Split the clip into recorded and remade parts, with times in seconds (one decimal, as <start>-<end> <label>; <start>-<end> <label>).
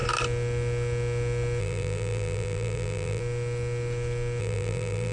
0.0-1.6 recorded; 1.6-3.2 remade; 3.2-4.4 recorded; 4.4-5.1 remade